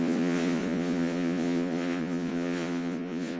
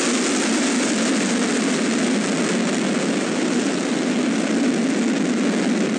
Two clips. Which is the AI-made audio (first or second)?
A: first